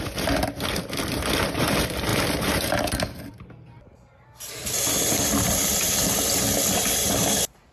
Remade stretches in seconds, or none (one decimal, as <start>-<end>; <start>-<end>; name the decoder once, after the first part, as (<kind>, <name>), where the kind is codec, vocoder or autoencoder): 0.0-7.7 (vocoder, BigVGAN v2)